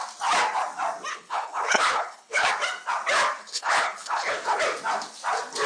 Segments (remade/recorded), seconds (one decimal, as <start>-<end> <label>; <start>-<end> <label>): 0.0-1.1 recorded; 1.1-2.5 remade; 2.5-3.4 recorded; 3.4-4.6 remade; 4.6-5.7 recorded